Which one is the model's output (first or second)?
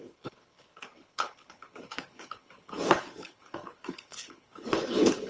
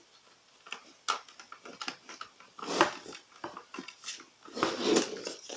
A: first